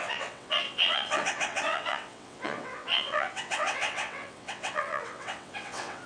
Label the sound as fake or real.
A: fake